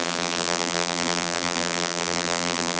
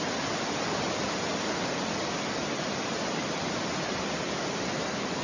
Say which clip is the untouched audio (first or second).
second